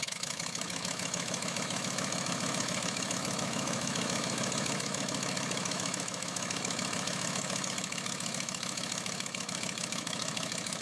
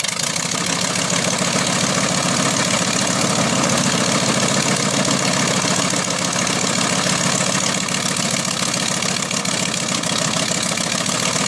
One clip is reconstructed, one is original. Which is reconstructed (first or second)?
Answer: first